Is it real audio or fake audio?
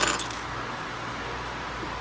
real